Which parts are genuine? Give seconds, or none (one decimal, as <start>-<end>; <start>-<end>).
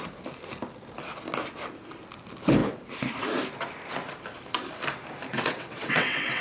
0.0-5.3